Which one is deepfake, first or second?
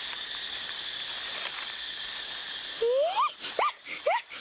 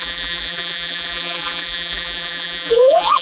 second